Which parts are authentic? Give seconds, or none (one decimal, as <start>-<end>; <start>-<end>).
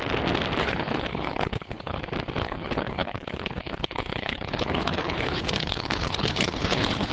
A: 0.0-0.6; 2.0-2.4